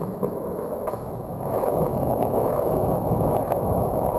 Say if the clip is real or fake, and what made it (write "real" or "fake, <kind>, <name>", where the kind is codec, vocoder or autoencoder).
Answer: fake, autoencoder, DAC-VAE